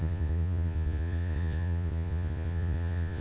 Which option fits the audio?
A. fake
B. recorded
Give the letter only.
A